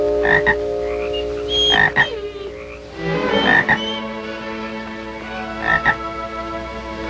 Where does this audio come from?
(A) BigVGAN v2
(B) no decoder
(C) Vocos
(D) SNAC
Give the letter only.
B